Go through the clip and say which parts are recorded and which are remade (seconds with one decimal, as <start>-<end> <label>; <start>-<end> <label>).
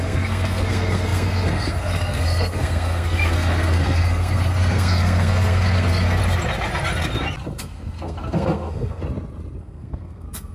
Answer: 0.0-6.2 remade; 6.2-7.6 recorded; 7.6-9.0 remade; 9.0-9.6 recorded; 9.6-10.5 remade